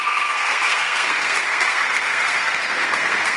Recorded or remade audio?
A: remade